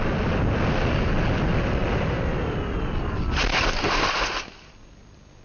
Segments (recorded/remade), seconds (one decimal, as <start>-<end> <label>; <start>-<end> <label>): 0.0-5.4 recorded